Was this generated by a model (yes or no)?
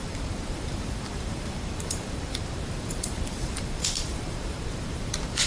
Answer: yes